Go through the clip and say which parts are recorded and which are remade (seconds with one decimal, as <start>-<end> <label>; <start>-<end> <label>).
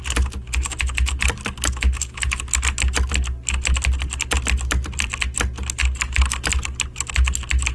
0.0-7.7 recorded